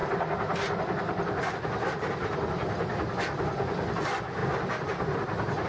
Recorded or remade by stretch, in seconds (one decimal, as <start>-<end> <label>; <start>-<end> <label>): 0.0-5.7 recorded